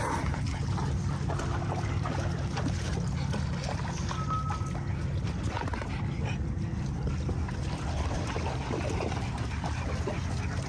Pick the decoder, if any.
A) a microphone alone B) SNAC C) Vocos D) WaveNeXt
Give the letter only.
A